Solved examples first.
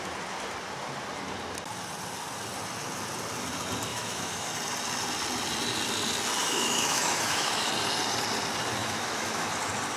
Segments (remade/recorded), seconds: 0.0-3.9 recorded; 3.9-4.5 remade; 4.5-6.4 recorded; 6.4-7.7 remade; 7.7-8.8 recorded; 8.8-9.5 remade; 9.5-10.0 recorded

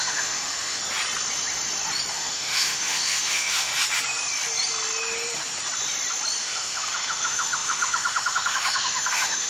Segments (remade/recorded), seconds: 0.0-0.8 remade; 0.8-2.1 recorded; 2.1-3.7 remade; 3.7-6.4 recorded; 6.4-9.5 remade

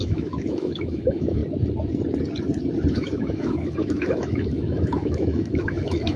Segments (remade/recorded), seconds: 0.0-1.4 remade; 1.4-2.9 recorded; 2.9-6.2 remade

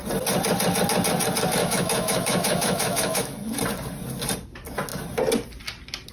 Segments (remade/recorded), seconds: 0.0-1.6 recorded; 1.6-3.5 remade; 3.5-6.1 recorded

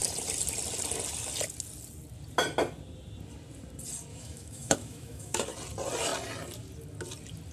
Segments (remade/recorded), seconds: 0.0-4.1 recorded; 4.1-5.4 remade; 5.4-7.5 recorded